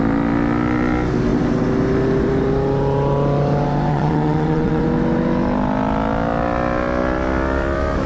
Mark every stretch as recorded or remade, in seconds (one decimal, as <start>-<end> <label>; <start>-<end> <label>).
0.0-3.9 recorded; 3.9-4.8 remade; 4.8-8.1 recorded